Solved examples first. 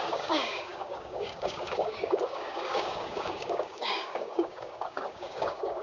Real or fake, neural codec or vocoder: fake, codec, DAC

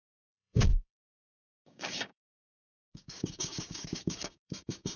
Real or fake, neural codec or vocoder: fake, codec, DAC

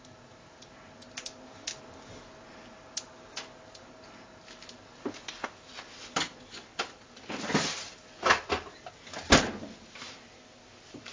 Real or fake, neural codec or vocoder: real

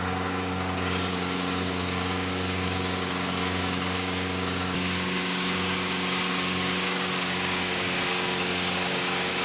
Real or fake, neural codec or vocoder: fake, codec, DAC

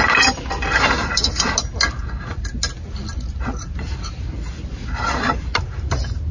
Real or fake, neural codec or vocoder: real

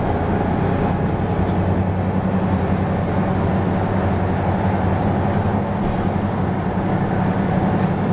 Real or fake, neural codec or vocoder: real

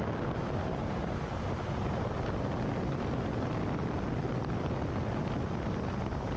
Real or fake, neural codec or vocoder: real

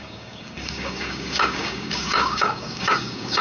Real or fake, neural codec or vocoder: fake, codec, DAC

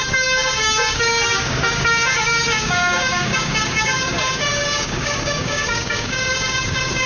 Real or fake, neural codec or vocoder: fake, codec, DAC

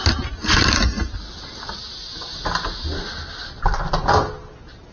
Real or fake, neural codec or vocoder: real